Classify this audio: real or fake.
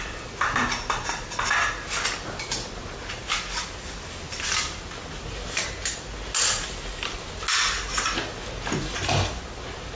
real